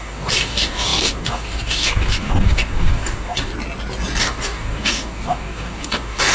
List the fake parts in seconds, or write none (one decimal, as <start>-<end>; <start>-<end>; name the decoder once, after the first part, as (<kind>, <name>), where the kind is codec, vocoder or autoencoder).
0.0-3.5 (codec, DAC); 4.2-6.3